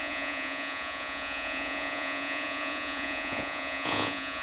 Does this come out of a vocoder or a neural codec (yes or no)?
yes